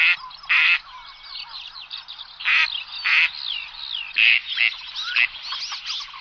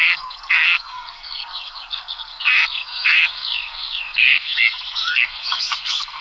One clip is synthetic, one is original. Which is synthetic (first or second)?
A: second